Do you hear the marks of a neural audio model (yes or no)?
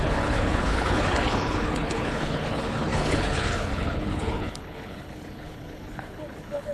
yes